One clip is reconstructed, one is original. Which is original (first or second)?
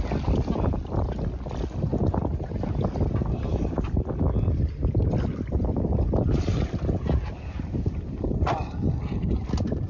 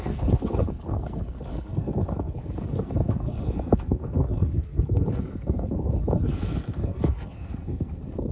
first